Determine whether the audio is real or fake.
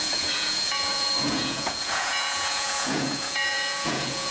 fake